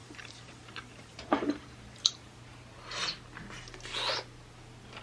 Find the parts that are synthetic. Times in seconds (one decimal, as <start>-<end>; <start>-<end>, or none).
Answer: 0.0-2.4